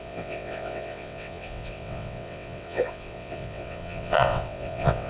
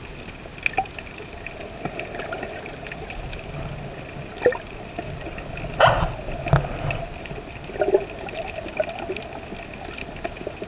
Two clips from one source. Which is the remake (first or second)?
first